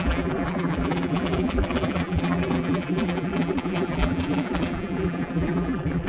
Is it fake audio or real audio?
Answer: fake